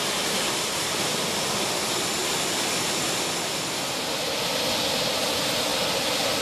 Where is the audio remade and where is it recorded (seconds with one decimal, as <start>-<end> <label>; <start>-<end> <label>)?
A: 0.0-1.1 remade; 1.1-4.9 recorded; 4.9-5.7 remade; 5.7-6.4 recorded